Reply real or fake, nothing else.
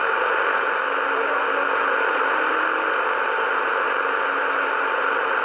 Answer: real